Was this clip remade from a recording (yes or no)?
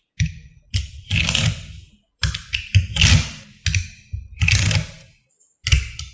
no